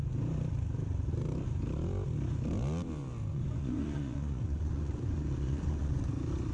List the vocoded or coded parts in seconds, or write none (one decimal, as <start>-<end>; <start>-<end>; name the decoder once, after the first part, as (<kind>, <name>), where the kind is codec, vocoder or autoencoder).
3.3-6.1 (vocoder, Vocos)